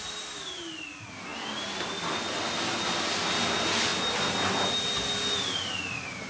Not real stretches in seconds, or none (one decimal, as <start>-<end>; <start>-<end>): none